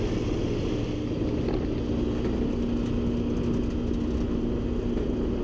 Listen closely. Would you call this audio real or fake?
real